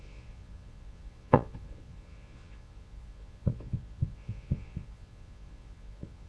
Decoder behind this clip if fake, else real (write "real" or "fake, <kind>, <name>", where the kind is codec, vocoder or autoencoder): fake, vocoder, Vocos